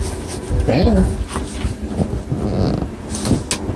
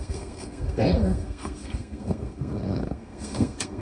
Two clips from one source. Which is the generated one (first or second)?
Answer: second